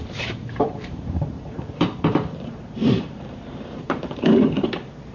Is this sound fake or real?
fake